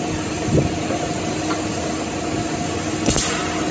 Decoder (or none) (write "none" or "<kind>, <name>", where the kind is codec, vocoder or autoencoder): none